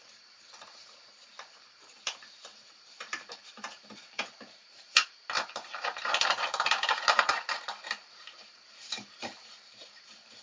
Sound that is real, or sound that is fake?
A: fake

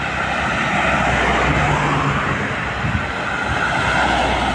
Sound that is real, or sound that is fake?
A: real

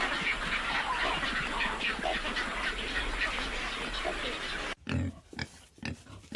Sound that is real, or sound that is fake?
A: real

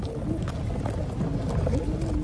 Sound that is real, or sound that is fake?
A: real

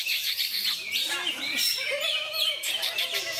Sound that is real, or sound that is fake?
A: fake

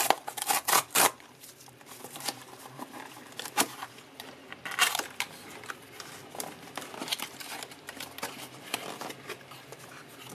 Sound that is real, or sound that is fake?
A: fake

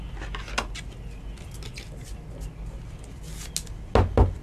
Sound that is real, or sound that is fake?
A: real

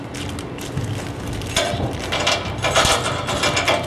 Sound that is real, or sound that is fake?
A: real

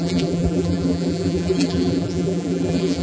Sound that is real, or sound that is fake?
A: fake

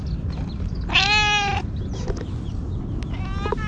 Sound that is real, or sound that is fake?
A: real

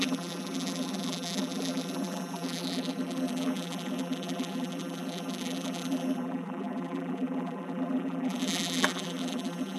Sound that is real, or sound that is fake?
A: fake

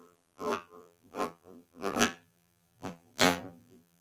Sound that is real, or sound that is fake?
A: fake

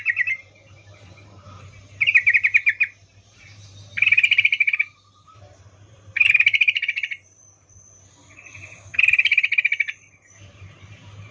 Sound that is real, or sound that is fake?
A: fake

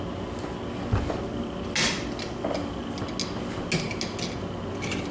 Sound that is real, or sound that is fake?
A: real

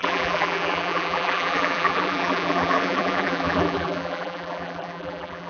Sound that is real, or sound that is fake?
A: fake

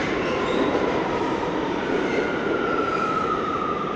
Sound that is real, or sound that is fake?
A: fake